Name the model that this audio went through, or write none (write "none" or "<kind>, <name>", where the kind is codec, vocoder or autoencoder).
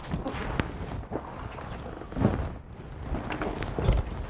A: none